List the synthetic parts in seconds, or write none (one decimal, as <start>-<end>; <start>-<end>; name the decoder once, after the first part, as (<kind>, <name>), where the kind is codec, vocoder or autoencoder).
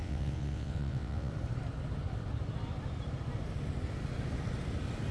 0.0-1.3 (vocoder, WaveNeXt)